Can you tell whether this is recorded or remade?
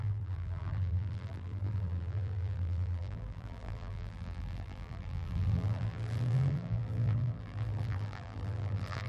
remade